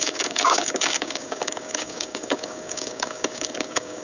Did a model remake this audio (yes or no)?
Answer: yes